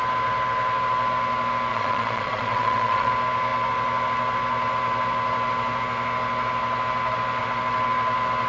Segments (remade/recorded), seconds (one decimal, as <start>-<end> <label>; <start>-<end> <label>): 0.0-1.7 recorded; 1.7-3.1 remade; 3.1-8.5 recorded